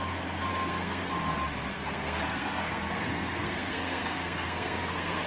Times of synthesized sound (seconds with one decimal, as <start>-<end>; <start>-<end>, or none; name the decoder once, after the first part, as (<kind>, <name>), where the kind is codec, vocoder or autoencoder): 0.5-1.1 (codec, SNAC); 1.7-5.3